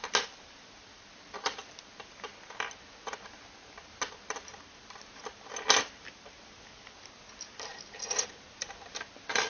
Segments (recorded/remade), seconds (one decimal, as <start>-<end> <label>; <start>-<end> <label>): 0.0-1.6 remade; 1.6-5.8 recorded; 5.8-7.7 remade; 7.7-8.3 recorded; 8.3-9.5 remade

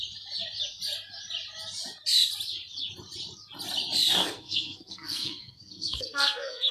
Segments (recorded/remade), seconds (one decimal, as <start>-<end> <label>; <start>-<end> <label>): 0.0-4.2 recorded; 4.2-6.7 remade